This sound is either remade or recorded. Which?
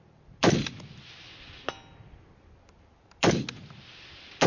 recorded